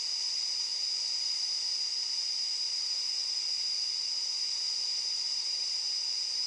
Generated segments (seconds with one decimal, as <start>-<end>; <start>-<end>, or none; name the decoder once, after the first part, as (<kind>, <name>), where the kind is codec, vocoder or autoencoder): none